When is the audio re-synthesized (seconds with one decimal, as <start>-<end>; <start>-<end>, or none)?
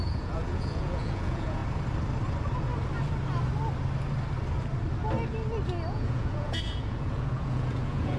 0.0-1.6; 5.9-8.2